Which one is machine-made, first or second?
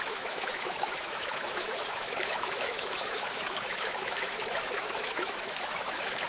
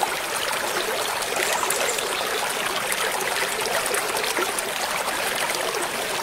first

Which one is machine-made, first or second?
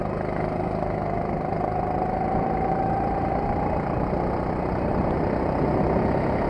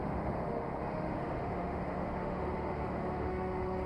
second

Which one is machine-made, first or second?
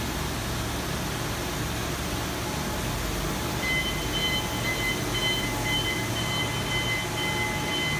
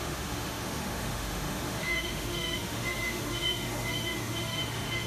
second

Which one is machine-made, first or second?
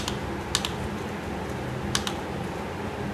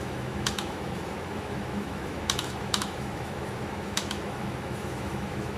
second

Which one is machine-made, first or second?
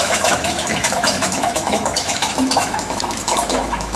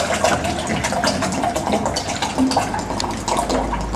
first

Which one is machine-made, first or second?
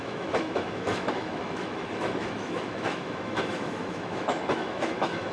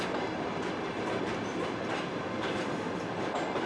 first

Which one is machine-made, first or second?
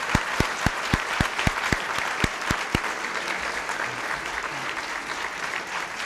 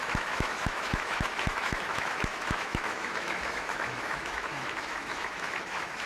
second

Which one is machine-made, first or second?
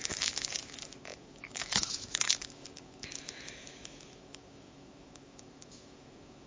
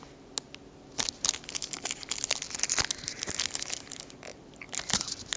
first